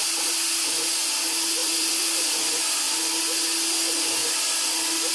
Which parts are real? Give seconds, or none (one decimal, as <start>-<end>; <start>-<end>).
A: 0.0-1.6; 2.6-4.2